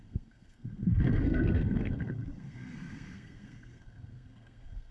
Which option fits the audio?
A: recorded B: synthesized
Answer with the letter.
B